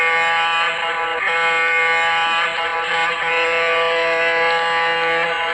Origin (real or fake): real